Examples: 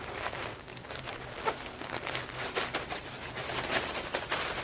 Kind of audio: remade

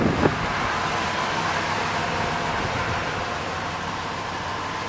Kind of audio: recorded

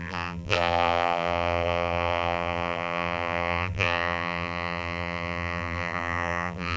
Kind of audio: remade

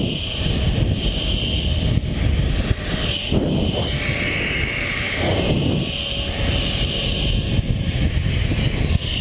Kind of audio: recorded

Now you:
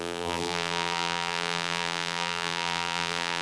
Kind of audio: remade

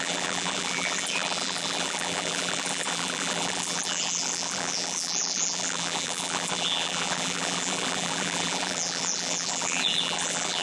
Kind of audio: remade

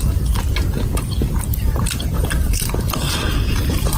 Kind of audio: remade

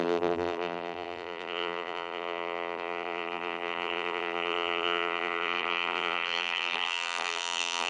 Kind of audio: remade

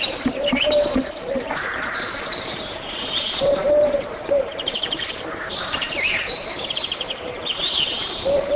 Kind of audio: remade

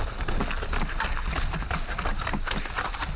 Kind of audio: recorded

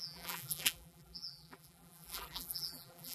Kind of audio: remade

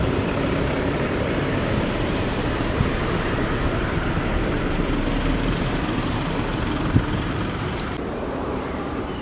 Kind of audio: remade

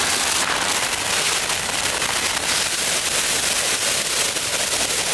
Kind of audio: recorded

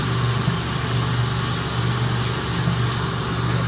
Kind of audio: recorded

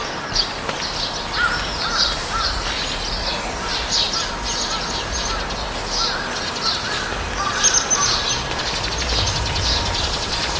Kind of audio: recorded